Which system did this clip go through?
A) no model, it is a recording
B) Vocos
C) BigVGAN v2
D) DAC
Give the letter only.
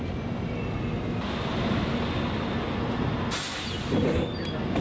A